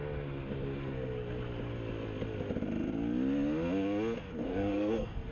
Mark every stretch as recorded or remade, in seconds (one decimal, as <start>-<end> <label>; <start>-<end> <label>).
0.0-4.4 recorded; 4.4-5.3 remade